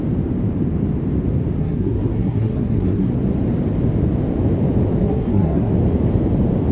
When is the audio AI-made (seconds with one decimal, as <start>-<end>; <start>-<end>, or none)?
1.6-3.1; 5.0-5.7